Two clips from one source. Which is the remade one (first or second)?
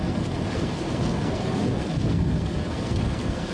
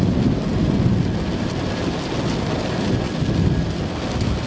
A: first